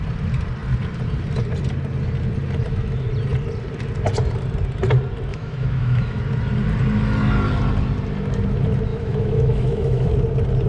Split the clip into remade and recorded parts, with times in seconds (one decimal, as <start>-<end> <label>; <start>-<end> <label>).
0.0-5.3 recorded; 5.3-6.2 remade; 6.2-8.9 recorded; 8.9-10.1 remade; 10.1-10.7 recorded